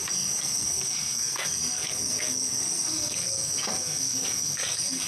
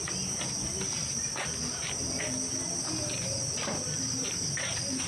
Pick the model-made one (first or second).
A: first